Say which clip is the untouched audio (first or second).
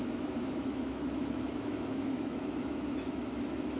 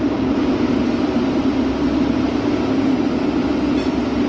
second